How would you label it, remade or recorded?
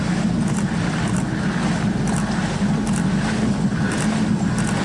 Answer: recorded